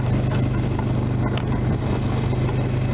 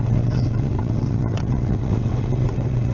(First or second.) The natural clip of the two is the first